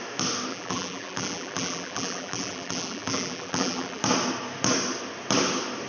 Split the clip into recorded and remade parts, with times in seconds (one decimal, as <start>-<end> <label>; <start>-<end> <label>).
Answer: 0.0-0.5 recorded; 0.5-4.0 remade; 4.0-5.9 recorded